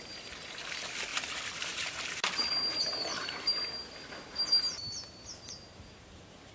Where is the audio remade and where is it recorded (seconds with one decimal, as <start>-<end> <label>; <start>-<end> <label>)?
0.0-1.1 recorded; 1.1-2.3 remade; 2.3-3.2 recorded; 3.2-3.8 remade; 3.8-5.7 recorded; 5.7-6.5 remade